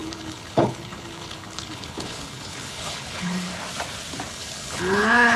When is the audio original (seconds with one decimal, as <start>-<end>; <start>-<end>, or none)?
3.5-4.3